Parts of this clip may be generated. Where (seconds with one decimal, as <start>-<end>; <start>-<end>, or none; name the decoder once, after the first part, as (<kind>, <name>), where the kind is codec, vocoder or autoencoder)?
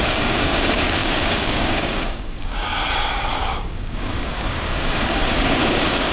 0.0-6.1 (codec, DAC)